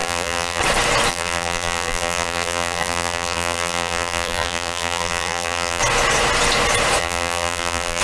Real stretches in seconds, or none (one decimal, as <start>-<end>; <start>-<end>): 0.6-1.1; 5.8-7.0